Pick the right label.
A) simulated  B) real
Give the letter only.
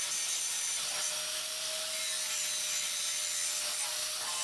B